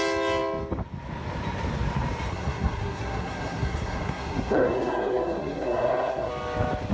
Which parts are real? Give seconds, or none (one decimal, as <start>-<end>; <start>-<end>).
0.0-2.3; 6.3-6.9